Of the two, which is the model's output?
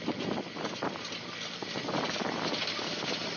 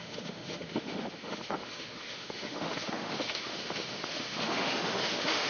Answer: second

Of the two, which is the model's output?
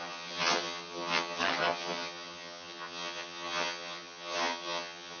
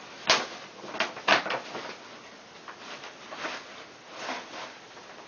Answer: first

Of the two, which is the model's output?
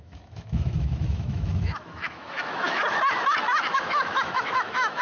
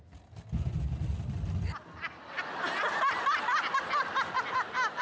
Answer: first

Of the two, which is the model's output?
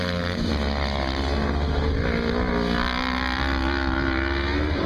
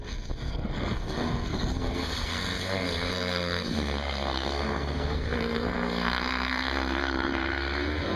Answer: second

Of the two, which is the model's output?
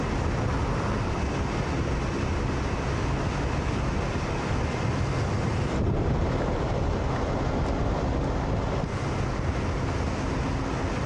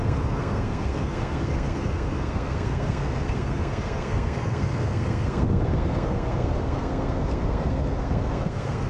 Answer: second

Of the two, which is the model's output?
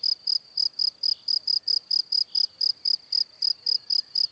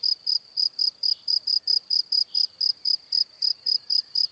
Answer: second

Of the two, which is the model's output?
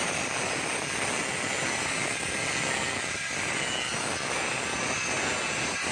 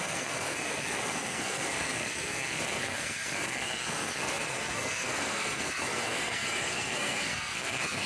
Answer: second